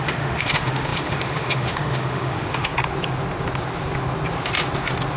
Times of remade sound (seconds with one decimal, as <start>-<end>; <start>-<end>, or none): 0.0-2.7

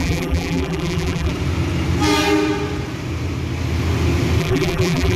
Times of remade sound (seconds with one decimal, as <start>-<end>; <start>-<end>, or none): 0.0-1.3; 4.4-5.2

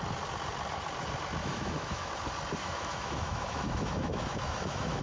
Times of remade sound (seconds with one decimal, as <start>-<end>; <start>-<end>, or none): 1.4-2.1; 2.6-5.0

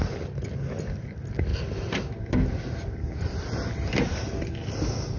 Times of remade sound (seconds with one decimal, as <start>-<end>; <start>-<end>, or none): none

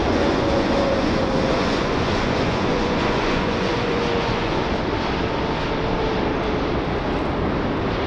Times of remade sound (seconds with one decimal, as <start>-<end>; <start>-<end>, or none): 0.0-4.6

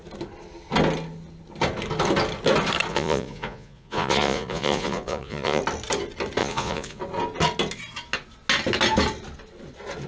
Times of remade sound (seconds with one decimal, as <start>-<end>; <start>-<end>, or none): 2.9-5.6; 6.4-7.0